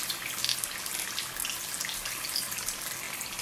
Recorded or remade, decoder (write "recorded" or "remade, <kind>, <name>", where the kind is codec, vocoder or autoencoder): recorded